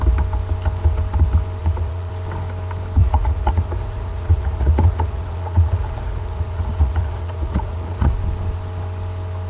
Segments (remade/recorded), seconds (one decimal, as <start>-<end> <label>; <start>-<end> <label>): 0.0-1.6 recorded; 1.6-2.1 remade; 2.1-3.0 recorded; 3.0-8.2 remade; 8.2-9.5 recorded